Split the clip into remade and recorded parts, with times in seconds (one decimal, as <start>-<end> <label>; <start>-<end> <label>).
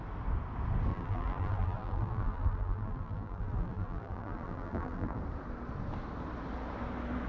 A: 0.0-0.9 recorded; 0.9-5.2 remade; 5.2-7.3 recorded